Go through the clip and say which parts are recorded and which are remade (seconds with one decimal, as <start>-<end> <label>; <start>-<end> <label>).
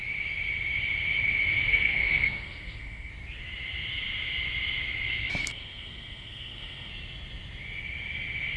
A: 0.0-1.7 recorded; 1.7-3.1 remade; 3.1-5.4 recorded; 5.4-6.9 remade; 6.9-8.6 recorded